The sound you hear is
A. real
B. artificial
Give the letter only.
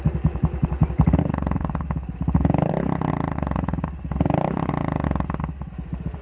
A